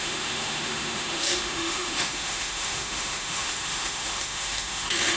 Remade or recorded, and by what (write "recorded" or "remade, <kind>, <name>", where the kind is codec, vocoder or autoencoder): remade, autoencoder, DAC-VAE